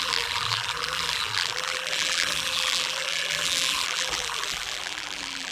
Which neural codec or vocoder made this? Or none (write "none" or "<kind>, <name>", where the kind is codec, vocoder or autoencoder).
vocoder, BigVGAN v2